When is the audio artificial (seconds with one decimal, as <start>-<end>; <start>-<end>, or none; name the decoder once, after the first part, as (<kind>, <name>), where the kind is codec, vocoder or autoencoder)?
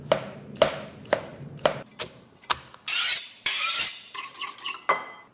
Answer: 1.3-4.5 (vocoder, BigVGAN v2)